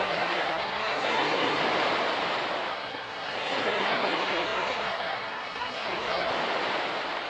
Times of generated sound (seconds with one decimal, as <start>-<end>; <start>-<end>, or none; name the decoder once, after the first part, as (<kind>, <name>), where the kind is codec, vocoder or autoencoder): 0.0-1.6 (codec, SNAC); 2.7-6.3